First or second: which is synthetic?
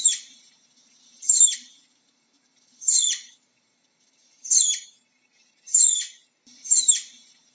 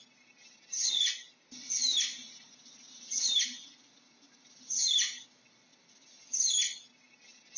first